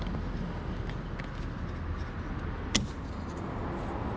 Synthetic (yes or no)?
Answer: no